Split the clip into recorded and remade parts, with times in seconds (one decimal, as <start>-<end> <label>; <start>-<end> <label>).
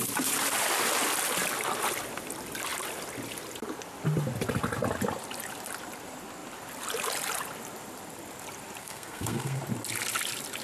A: 0.0-8.8 recorded; 8.8-9.6 remade; 9.6-10.6 recorded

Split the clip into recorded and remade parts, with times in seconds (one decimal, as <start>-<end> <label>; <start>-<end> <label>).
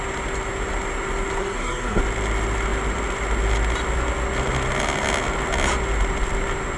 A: 0.0-1.4 recorded; 1.4-2.0 remade; 2.0-6.8 recorded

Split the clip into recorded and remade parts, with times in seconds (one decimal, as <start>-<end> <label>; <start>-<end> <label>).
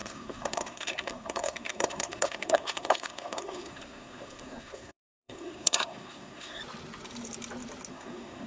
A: 0.0-6.6 remade; 6.6-7.9 recorded; 7.9-8.5 remade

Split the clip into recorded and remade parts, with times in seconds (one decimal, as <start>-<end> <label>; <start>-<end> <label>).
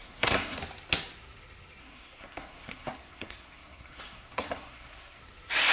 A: 0.0-0.6 remade; 0.6-1.8 recorded; 1.8-5.2 remade; 5.2-5.7 recorded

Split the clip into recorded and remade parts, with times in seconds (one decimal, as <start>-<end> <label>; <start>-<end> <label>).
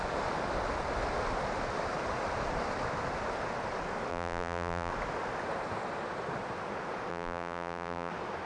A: 0.0-4.1 recorded; 4.1-4.9 remade; 4.9-7.1 recorded; 7.1-8.1 remade; 8.1-8.5 recorded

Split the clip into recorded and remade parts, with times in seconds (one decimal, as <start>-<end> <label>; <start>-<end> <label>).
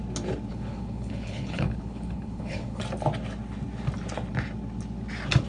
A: 0.0-0.5 recorded; 0.5-2.8 remade; 2.8-5.5 recorded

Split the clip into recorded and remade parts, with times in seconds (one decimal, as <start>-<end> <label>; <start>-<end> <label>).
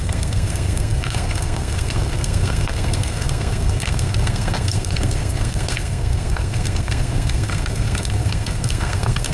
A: 0.0-9.3 remade